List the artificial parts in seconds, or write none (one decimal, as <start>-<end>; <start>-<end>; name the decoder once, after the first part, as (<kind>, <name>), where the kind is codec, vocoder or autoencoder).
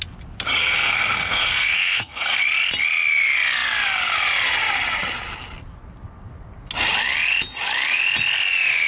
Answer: 0.6-2.4 (codec, SNAC)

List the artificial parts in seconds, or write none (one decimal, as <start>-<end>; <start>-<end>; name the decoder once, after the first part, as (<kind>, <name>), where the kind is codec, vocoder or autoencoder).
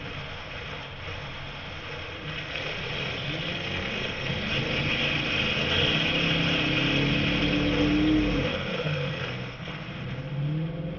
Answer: 3.5-4.3 (codec, SNAC); 8.5-9.8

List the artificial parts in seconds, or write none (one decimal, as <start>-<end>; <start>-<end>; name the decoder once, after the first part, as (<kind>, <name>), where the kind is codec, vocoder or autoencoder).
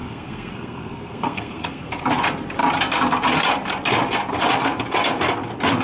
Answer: 0.0-1.9 (codec, SNAC)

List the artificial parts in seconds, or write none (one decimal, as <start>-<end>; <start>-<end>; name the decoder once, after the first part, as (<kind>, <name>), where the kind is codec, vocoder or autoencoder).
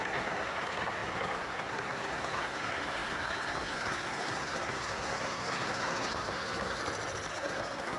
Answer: 0.0-6.8 (codec, SNAC); 7.3-8.0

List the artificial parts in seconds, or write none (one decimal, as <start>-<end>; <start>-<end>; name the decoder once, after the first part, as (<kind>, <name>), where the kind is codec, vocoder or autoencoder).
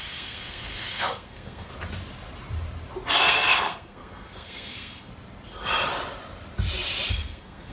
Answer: 0.0-1.7 (codec, SNAC); 3.1-5.1; 7.1-7.7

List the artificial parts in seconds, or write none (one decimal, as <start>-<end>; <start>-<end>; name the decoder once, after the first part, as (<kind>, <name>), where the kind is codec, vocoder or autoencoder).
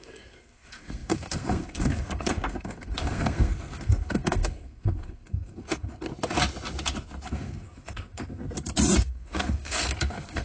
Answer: 0.0-6.1 (codec, SNAC); 7.3-8.4; 9.0-10.4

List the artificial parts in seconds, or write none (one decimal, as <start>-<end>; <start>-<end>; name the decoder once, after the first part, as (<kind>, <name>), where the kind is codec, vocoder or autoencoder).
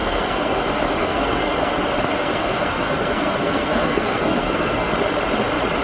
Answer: 0.0-0.6 (codec, SNAC); 1.0-1.7; 2.2-4.9